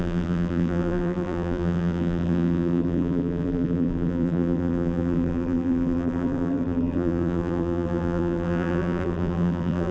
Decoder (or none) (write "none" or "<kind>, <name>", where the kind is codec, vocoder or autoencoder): vocoder, BigVGAN v2